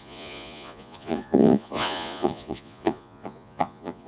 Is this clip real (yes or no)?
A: no